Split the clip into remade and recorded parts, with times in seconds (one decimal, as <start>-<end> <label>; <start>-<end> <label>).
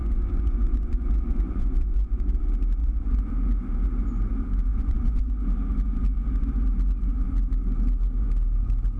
0.0-2.4 remade; 2.4-2.8 recorded; 2.8-3.3 remade; 3.3-4.7 recorded; 4.7-5.3 remade; 5.3-9.0 recorded